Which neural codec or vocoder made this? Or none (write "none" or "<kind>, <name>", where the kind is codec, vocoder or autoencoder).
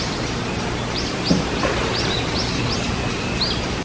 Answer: none